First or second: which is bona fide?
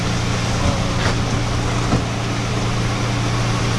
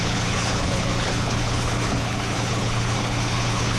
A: first